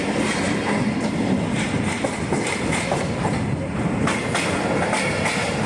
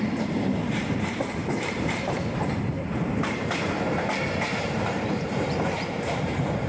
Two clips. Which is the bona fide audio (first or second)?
first